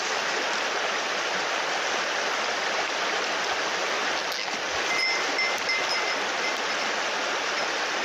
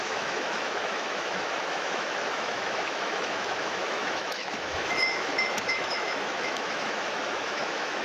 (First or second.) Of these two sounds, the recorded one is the first